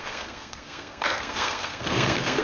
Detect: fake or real fake